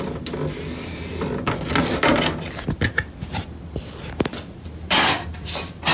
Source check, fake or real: real